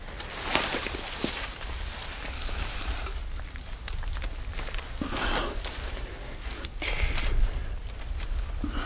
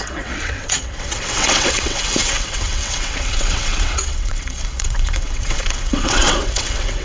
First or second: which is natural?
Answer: first